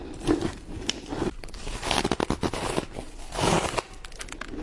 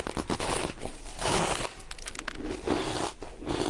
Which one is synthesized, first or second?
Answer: first